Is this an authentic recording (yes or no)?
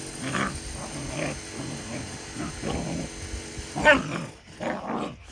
yes